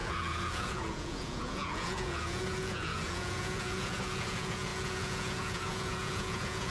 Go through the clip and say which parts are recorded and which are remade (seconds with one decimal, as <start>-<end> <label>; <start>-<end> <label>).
0.0-6.7 remade